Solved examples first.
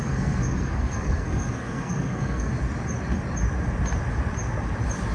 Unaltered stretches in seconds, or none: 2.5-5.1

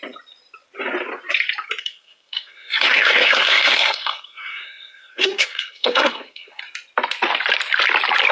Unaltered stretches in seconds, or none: 0.0-1.8; 6.6-8.3

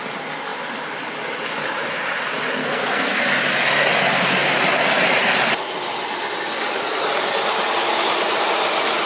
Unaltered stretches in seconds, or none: 0.0-2.6; 3.2-9.1

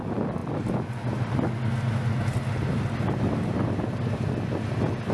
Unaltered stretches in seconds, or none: 0.0-5.1

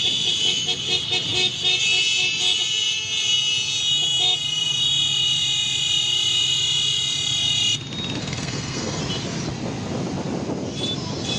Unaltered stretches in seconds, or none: 0.0-8.2; 9.0-11.4

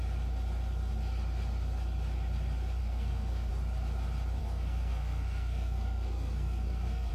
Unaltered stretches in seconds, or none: 0.0-2.8; 3.5-4.4